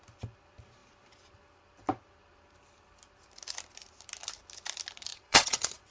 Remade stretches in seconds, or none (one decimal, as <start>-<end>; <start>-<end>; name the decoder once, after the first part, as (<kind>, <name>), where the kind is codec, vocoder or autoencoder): 5.1-5.9 (vocoder, WaveNeXt)